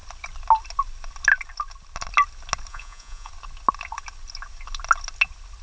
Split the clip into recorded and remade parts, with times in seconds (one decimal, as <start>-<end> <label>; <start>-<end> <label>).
0.0-2.7 recorded; 2.7-3.3 remade; 3.3-5.6 recorded